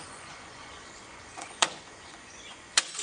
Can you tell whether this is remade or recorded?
remade